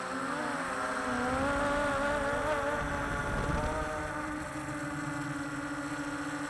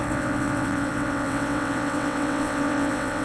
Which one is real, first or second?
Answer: first